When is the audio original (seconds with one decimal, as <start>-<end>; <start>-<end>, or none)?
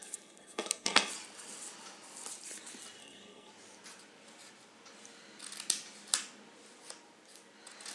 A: 1.1-3.0; 3.5-7.9